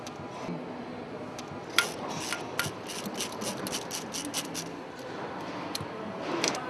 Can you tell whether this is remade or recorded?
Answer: recorded